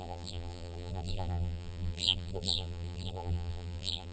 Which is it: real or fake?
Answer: fake